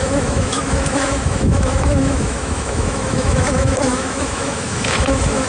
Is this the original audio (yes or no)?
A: no